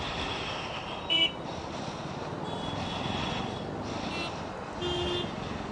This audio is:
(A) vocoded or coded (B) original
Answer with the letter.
B